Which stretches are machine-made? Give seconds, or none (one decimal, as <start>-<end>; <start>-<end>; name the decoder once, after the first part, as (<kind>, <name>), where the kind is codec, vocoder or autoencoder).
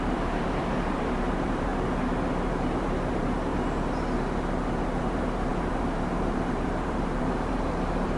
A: 0.0-1.7 (vocoder, BigVGAN v2); 2.5-3.5; 5.0-8.2